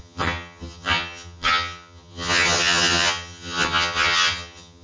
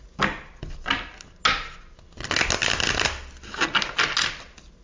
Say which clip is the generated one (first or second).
first